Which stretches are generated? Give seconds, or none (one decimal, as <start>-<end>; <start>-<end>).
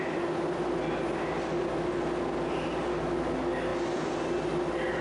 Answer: none